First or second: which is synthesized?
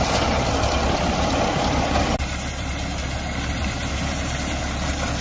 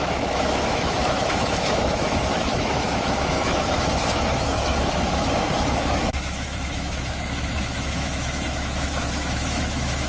second